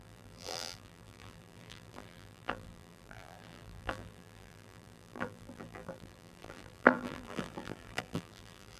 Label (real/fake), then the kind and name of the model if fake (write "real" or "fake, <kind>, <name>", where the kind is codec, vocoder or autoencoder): fake, vocoder, BigVGAN v2